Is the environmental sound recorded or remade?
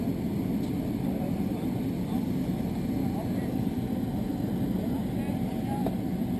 recorded